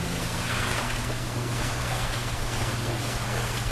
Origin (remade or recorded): remade